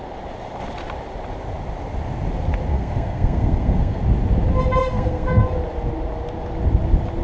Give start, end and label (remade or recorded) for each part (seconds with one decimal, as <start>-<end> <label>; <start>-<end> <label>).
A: 0.0-2.7 recorded; 2.7-4.0 remade; 4.0-4.8 recorded; 4.8-5.4 remade; 5.4-7.2 recorded